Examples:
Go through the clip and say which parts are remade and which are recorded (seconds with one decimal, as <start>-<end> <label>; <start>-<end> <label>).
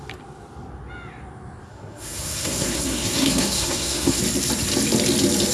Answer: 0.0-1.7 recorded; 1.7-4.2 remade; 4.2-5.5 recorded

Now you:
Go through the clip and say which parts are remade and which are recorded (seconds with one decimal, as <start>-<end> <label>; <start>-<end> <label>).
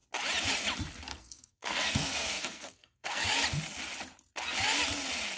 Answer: 0.0-1.1 recorded; 1.1-3.3 remade; 3.3-5.4 recorded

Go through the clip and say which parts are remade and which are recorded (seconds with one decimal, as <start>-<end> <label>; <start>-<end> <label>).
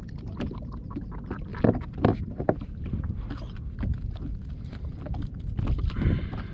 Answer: 0.0-6.5 recorded